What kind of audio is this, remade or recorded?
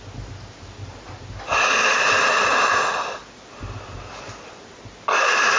recorded